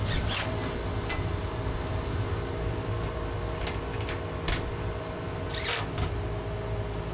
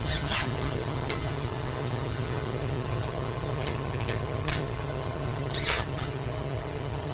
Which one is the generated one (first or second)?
second